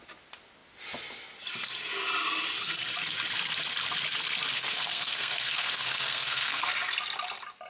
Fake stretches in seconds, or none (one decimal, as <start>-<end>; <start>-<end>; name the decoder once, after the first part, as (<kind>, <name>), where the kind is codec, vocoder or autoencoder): 4.5-6.7 (codec, SNAC)